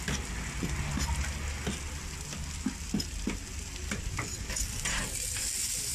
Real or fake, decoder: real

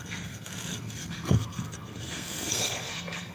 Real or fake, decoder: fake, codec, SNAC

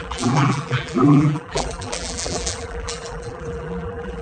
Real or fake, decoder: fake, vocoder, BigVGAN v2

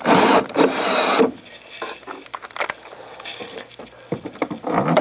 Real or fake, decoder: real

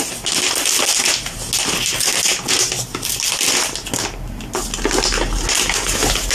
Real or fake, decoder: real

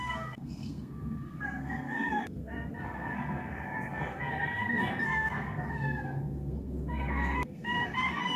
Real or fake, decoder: fake, codec, SNAC